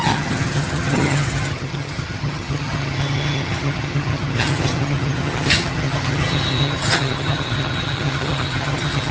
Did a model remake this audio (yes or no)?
yes